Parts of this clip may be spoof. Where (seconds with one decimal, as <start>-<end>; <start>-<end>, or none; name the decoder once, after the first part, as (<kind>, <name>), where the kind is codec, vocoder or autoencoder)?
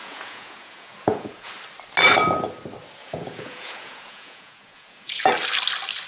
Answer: 0.0-1.5 (vocoder, Vocos); 3.0-5.3